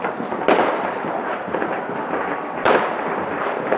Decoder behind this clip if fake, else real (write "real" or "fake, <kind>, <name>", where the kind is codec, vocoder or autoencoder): fake, vocoder, BigVGAN v2